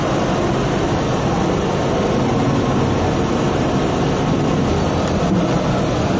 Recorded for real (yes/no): yes